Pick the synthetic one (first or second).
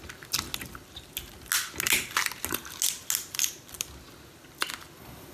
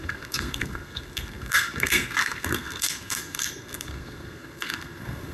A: second